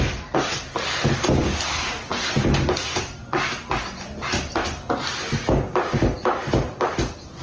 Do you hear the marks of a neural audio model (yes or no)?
no